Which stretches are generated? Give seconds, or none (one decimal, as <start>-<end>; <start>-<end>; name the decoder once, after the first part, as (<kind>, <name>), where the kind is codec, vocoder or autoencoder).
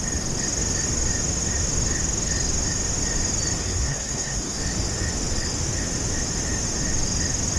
3.6-4.6 (codec, SNAC)